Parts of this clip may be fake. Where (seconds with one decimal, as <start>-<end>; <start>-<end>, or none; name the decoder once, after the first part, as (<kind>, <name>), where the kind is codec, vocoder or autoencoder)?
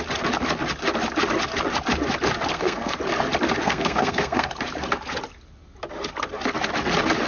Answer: 2.5-3.0 (codec, SNAC); 3.6-4.5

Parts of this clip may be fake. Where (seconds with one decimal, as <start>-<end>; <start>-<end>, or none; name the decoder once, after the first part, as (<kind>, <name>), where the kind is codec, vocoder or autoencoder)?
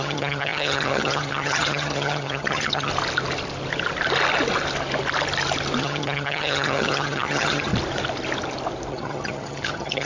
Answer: 0.0-2.9 (vocoder, HiFi-GAN); 5.8-7.7; 8.9-10.1